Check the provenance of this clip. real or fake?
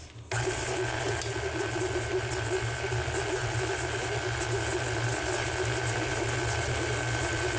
real